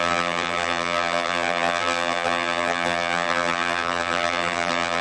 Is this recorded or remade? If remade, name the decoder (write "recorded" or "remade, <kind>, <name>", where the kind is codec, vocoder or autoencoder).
remade, vocoder, BigVGAN v2